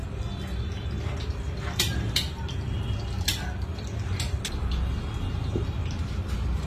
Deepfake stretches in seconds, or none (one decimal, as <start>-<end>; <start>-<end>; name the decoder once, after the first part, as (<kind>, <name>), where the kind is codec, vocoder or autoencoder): none